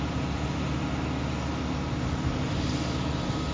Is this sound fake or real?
real